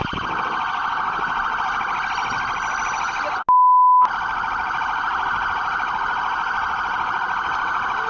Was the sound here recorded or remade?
recorded